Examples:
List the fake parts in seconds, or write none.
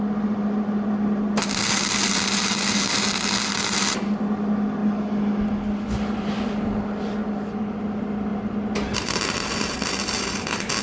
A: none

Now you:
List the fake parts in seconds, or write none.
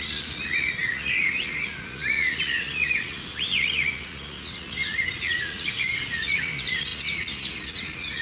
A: 0.0-8.2 (vocoder, Vocos)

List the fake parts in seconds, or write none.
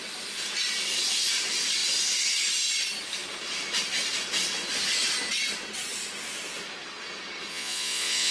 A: 7.5-8.3 (vocoder, Vocos)